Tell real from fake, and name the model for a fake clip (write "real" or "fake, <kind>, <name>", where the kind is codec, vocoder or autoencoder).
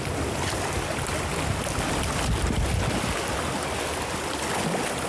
real